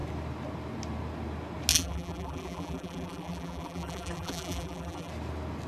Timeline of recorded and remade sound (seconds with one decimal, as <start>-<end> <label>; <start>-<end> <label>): 0.0-1.7 recorded; 1.7-5.1 remade; 5.1-5.7 recorded